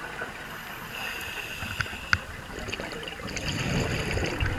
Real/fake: real